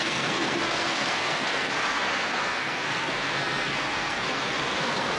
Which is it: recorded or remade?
remade